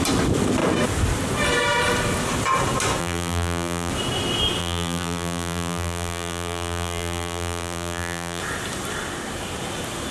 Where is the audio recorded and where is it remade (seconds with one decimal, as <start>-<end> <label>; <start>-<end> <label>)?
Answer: 0.0-3.0 recorded; 3.0-3.9 remade; 3.9-4.6 recorded; 4.6-8.4 remade; 8.4-10.1 recorded